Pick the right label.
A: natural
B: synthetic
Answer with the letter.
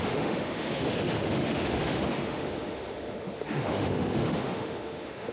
B